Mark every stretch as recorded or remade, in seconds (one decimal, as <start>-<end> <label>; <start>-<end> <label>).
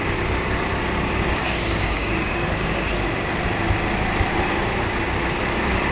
0.0-1.4 recorded; 1.4-2.9 remade; 2.9-5.9 recorded